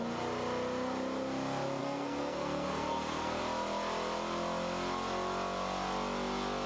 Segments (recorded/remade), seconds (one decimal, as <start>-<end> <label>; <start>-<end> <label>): 0.0-1.8 recorded; 1.8-3.4 remade; 3.4-6.7 recorded